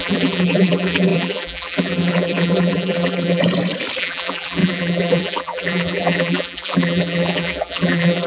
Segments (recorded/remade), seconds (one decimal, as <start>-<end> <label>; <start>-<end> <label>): 0.0-3.4 remade; 3.4-4.0 recorded; 4.0-8.3 remade